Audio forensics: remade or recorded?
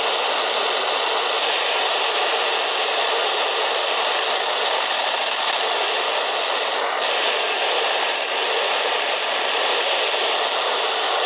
recorded